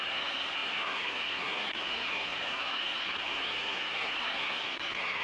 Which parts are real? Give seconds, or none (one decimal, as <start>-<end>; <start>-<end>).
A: none